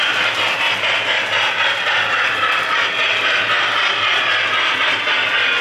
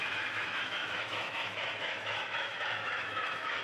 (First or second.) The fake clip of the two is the second